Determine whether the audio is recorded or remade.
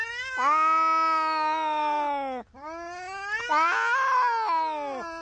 recorded